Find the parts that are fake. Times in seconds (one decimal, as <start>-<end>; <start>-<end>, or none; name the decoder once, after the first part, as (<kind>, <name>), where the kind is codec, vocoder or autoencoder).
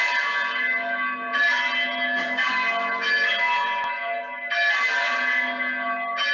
none